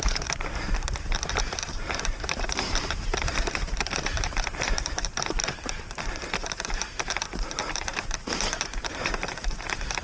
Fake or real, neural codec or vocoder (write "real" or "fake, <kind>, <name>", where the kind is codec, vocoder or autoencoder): fake, vocoder, BigVGAN v2